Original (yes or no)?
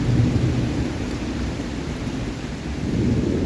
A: no